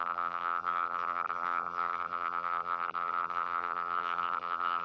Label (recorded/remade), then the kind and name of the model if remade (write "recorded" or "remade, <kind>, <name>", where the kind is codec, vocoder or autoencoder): remade, vocoder, BigVGAN v2